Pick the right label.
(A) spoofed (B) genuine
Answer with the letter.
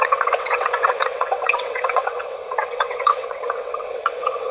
A